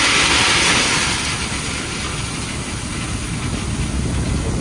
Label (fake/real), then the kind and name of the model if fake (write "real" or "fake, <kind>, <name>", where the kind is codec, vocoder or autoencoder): real